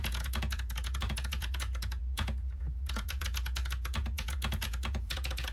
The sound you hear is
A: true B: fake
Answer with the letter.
B